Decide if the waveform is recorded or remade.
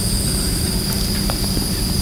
recorded